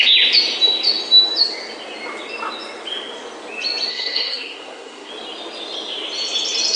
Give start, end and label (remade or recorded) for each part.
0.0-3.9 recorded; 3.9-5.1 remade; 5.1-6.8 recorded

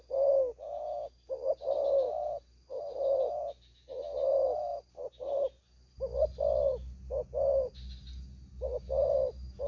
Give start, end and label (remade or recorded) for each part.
0.0-9.7 recorded

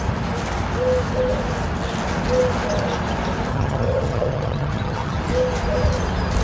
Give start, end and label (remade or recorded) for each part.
0.0-3.5 recorded; 3.5-5.2 remade; 5.2-6.4 recorded

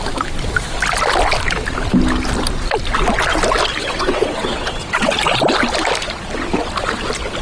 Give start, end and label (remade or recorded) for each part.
0.0-3.8 recorded; 3.8-5.1 remade; 5.1-7.4 recorded

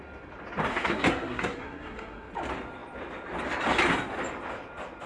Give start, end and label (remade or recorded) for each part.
0.0-0.7 recorded; 0.7-2.3 remade; 2.3-5.1 recorded

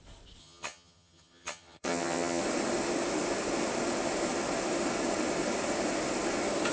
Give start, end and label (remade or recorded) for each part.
0.0-0.4 recorded; 0.4-2.4 remade; 2.4-6.7 recorded

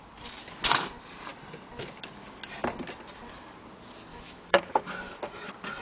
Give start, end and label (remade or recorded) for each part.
0.0-4.1 recorded; 4.1-4.7 remade; 4.7-5.8 recorded